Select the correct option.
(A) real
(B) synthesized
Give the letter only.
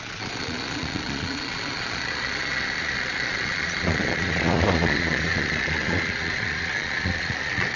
B